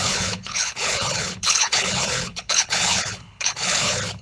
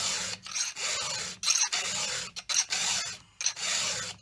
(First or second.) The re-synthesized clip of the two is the first